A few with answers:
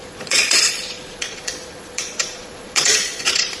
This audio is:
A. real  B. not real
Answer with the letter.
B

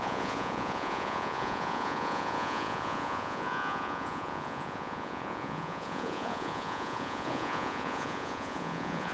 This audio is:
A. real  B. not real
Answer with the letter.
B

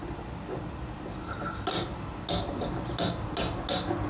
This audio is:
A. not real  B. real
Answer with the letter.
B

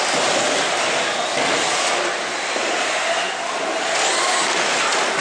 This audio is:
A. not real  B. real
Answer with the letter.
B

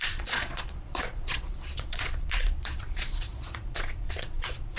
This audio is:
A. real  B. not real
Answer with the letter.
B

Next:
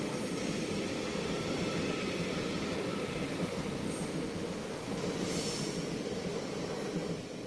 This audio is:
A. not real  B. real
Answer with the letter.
B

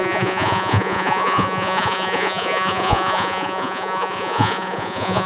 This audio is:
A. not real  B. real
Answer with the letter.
A